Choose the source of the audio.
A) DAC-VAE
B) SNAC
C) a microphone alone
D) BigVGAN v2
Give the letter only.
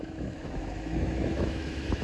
A